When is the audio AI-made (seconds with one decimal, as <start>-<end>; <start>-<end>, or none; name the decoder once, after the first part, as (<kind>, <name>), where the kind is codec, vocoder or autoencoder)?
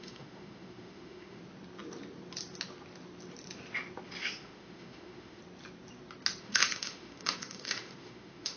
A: 0.0-1.4 (autoencoder, DAC-VAE); 4.2-5.4; 6.4-8.6